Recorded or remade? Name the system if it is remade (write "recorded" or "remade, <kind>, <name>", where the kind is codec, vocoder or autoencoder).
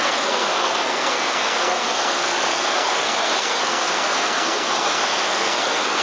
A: remade, codec, SNAC